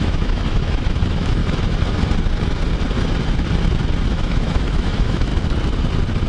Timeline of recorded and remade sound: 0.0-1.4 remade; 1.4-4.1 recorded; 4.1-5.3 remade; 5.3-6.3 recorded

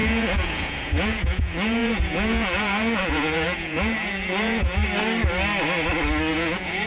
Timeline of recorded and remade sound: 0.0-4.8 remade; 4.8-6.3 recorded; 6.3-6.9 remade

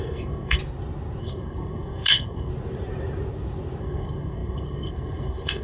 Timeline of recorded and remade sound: 0.0-0.6 remade; 0.6-1.2 recorded; 1.2-2.5 remade; 2.5-3.8 recorded; 3.8-5.6 remade

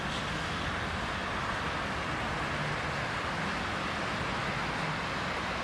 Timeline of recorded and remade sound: 0.0-5.6 recorded

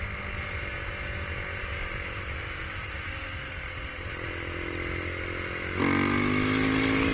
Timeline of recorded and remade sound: 0.0-1.6 recorded; 1.6-3.5 remade; 3.5-7.1 recorded

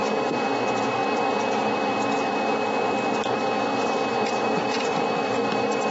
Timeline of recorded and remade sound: 0.0-4.6 recorded; 4.6-5.4 remade; 5.4-5.9 recorded

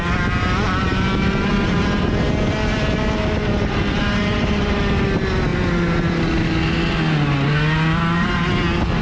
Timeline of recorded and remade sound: 0.0-0.8 recorded; 0.8-1.5 remade; 1.5-4.0 recorded; 4.0-4.8 remade; 4.8-9.0 recorded

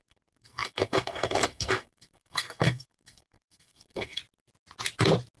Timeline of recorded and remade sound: 0.0-4.2 remade; 4.2-5.4 recorded